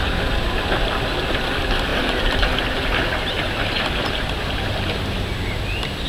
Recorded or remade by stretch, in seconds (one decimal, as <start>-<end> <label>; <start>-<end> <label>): 0.0-1.9 recorded; 1.9-5.4 remade; 5.4-6.1 recorded